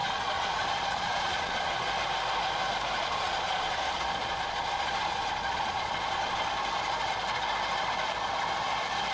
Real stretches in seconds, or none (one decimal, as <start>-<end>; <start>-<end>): 1.7-3.0; 6.5-9.1